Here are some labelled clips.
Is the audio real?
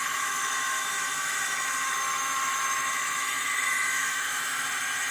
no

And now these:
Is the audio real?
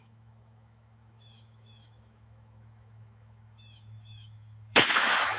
no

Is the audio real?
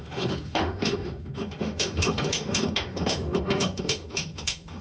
no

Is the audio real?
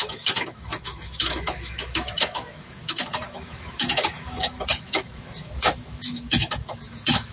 no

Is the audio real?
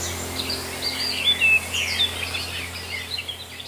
yes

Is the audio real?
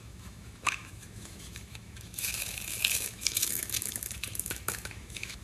no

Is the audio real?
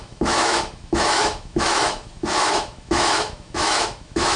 no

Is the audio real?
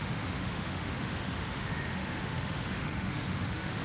no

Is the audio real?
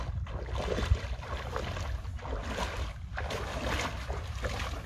yes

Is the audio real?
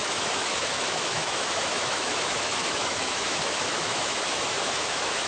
no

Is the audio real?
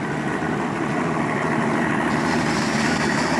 yes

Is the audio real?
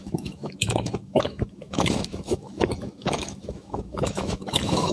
no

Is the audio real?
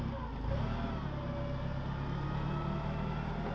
yes